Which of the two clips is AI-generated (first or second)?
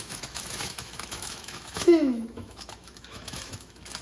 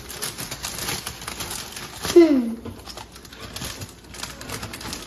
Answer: first